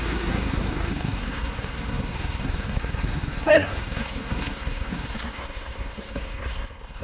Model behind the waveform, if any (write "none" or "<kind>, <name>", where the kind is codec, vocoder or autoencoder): codec, SNAC